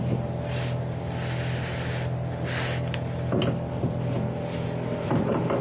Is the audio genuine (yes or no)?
yes